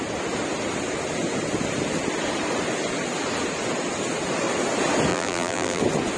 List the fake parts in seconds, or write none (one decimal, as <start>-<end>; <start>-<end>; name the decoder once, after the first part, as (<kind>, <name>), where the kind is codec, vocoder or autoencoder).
5.1-5.8 (vocoder, BigVGAN v2)